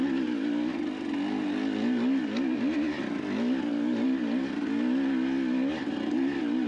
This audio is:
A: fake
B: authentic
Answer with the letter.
B